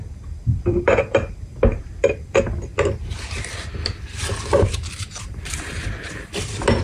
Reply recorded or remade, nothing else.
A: remade